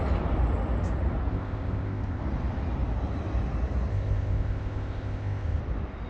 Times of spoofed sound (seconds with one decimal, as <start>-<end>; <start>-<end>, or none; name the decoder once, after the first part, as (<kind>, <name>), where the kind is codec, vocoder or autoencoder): 1.3-2.2 (codec, ZipCodec); 3.9-5.6